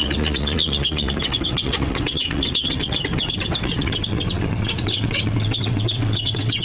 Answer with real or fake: fake